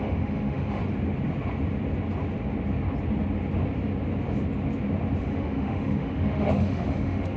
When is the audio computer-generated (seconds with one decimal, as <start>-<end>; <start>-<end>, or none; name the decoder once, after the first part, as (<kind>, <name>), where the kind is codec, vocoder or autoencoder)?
0.0-0.8 (autoencoder, DAC-VAE); 5.2-7.4